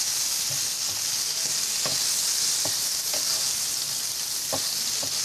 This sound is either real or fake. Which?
real